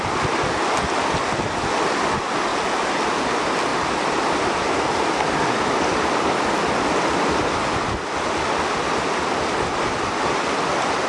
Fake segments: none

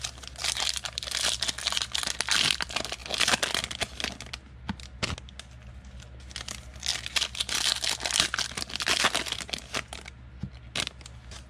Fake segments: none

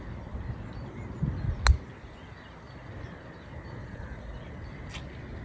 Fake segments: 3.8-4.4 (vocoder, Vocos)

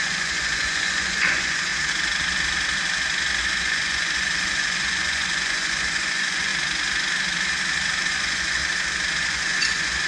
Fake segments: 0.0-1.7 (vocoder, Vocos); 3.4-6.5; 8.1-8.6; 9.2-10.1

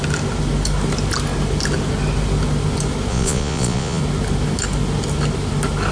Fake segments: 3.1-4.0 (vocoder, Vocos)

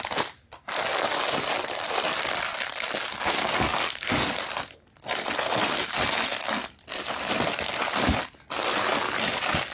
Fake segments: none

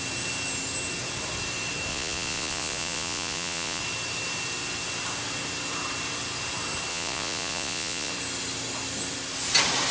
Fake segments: 1.9-3.8 (vocoder, Vocos); 6.9-8.1

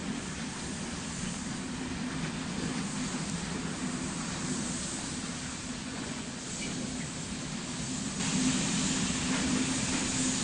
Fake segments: 5.8-6.4 (vocoder, Vocos)